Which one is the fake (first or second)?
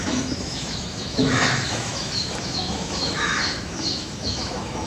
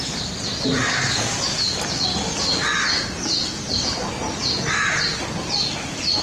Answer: first